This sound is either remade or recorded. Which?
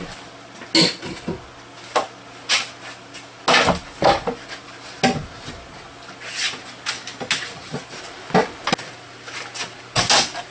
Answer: recorded